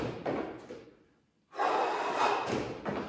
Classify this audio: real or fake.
real